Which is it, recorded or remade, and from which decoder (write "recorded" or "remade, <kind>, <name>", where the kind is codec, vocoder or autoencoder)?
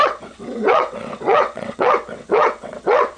remade, vocoder, WaveNeXt